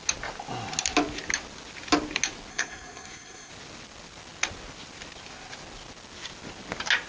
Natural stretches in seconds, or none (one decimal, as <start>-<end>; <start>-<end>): 0.0-2.5; 3.5-7.1